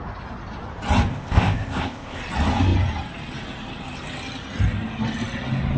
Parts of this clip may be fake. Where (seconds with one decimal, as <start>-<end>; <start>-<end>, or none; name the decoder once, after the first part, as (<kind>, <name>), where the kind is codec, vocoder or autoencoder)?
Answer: 1.1-2.2 (codec, ZipCodec)